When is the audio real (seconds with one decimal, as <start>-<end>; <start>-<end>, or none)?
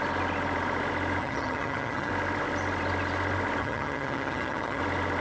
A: 0.0-1.2; 2.1-3.6; 4.8-5.2